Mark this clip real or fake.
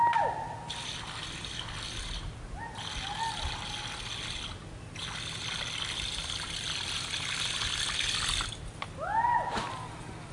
real